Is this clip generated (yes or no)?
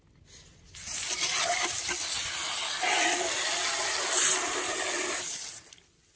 no